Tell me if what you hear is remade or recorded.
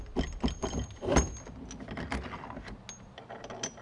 recorded